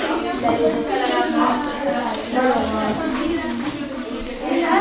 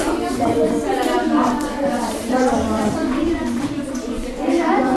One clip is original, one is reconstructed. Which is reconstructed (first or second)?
second